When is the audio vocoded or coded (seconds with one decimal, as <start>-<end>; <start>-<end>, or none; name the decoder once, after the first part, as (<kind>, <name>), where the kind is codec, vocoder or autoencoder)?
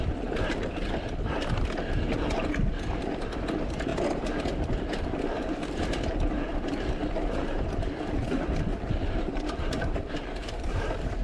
8.7-11.2 (vocoder, BigVGAN v2)